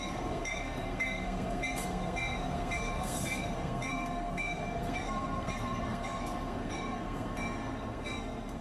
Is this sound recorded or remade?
remade